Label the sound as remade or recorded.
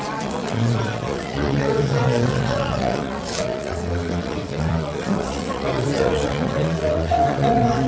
remade